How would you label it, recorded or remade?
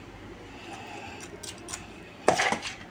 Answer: recorded